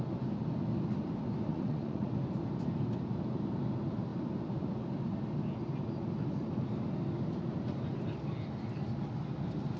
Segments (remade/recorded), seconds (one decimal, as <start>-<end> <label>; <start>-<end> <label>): 0.0-1.5 recorded; 1.5-2.1 remade; 2.1-9.8 recorded